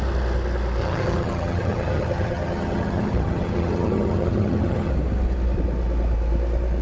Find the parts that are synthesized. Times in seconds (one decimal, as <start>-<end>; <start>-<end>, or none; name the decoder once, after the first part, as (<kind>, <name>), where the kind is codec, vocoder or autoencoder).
0.8-4.9 (vocoder, HiFi-GAN)